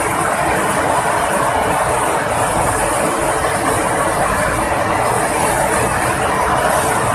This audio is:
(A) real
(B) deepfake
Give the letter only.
A